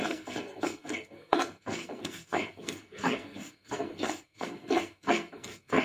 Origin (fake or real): fake